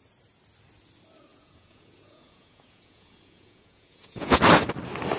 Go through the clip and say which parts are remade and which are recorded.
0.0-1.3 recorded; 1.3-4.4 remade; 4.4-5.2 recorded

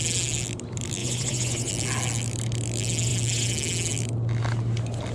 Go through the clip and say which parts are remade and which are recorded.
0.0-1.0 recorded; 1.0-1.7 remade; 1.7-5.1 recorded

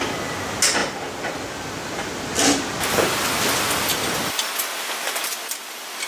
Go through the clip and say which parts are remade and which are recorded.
0.0-6.1 recorded

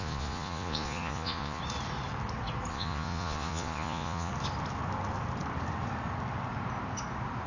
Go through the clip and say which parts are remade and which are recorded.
0.0-1.6 remade; 1.6-2.7 recorded; 2.7-4.3 remade; 4.3-7.5 recorded

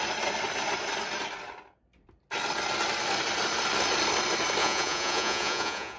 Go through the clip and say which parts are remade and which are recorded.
0.0-4.6 recorded; 4.6-6.0 remade

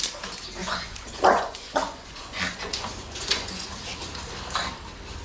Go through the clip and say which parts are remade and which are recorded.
0.0-0.6 recorded; 0.6-3.7 remade; 3.7-5.2 recorded

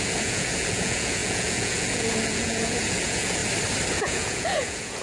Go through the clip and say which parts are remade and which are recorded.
0.0-3.4 remade; 3.4-3.9 recorded; 3.9-5.0 remade

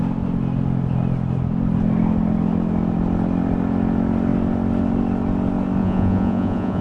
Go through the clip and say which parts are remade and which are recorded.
0.0-5.8 recorded; 5.8-6.8 remade